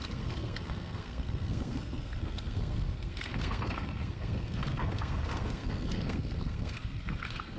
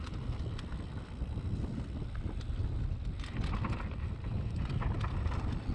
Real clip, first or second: second